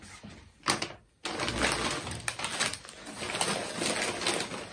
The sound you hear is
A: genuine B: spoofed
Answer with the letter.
A